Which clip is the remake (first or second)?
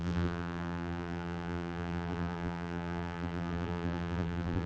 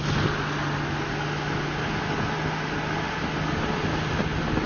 first